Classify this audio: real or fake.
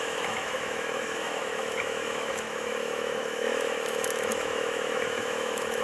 fake